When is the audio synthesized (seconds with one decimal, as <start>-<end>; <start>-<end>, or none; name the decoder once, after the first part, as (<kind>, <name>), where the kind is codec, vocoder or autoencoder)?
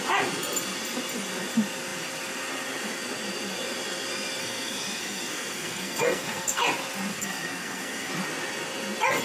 4.4-6.6 (codec, SNAC); 7.1-8.1